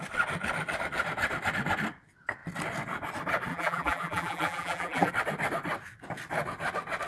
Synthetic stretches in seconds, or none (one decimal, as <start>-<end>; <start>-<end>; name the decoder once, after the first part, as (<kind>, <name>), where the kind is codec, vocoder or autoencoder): 3.5-5.1 (vocoder, BigVGAN v2)

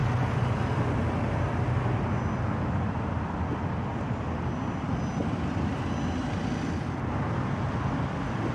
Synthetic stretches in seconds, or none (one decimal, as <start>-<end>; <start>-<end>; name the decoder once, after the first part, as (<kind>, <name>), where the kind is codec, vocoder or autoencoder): none

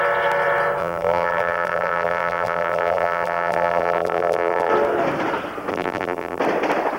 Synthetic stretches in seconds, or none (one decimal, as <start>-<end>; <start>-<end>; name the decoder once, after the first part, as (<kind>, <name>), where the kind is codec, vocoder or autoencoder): 0.8-4.7 (vocoder, BigVGAN v2); 5.7-6.4

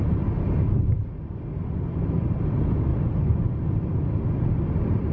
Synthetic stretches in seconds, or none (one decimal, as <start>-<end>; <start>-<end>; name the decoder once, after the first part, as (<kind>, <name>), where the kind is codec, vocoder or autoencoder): 2.9-3.4 (vocoder, BigVGAN v2)

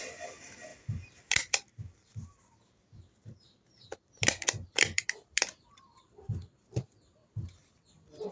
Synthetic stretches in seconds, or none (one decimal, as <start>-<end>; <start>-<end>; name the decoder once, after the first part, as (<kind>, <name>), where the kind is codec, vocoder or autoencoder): 0.7-5.7 (vocoder, BigVGAN v2)

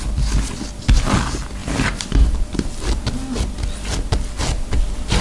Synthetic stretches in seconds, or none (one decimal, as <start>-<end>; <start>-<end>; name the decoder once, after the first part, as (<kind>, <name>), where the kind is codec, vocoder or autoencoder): 1.6-3.0 (vocoder, BigVGAN v2); 4.4-5.2

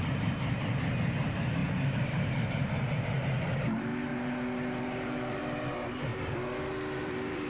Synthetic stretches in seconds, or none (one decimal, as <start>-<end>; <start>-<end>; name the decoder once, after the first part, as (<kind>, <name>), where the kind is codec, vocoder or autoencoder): 0.0-4.1 (vocoder, BigVGAN v2); 4.8-6.1; 7.0-7.5

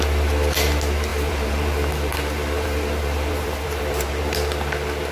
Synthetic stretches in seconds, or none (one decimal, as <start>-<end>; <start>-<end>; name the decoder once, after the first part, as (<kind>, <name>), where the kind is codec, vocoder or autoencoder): 1.1-4.2 (vocoder, BigVGAN v2)